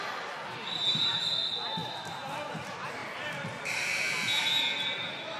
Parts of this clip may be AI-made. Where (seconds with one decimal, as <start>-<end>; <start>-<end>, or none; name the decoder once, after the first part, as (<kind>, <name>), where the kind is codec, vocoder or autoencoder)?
0.0-5.4 (vocoder, BigVGAN v2)